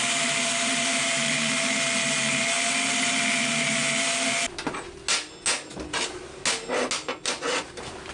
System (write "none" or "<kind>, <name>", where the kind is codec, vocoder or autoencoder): none